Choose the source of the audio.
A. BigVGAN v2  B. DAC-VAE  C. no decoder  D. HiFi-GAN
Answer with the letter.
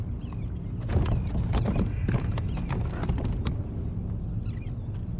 C